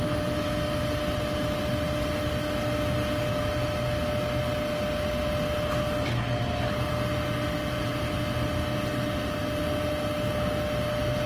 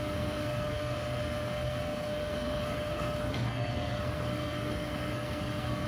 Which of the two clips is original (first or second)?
first